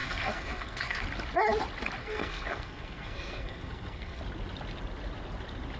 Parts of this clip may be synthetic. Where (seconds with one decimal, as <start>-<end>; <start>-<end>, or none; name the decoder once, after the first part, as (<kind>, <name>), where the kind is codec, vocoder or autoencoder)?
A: 0.0-1.0 (codec, SNAC); 2.0-4.2